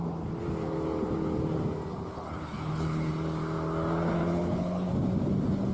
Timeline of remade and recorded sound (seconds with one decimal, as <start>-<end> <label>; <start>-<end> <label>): 0.0-1.9 recorded; 1.9-3.1 remade; 3.1-4.2 recorded; 4.2-4.9 remade; 4.9-5.7 recorded